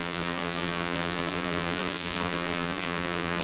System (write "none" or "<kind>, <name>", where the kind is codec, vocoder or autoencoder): vocoder, BigVGAN v2